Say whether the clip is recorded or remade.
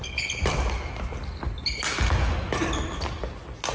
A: recorded